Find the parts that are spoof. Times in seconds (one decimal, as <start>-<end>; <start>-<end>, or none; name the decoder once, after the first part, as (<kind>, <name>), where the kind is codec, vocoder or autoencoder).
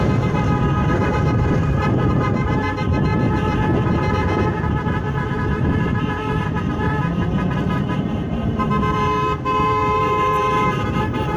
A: 0.0-3.1 (vocoder, BigVGAN v2); 6.7-11.4